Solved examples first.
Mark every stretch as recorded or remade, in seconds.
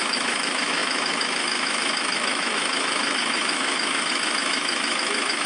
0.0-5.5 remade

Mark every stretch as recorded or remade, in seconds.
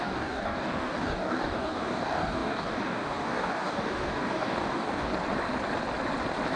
0.0-5.1 remade; 5.1-6.6 recorded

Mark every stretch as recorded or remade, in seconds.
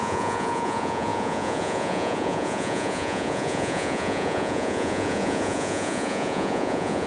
0.0-7.1 remade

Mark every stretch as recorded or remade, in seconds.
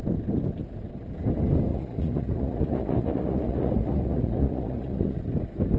0.0-1.7 recorded; 1.7-5.2 remade; 5.2-5.8 recorded